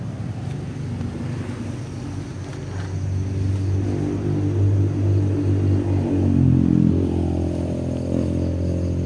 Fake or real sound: real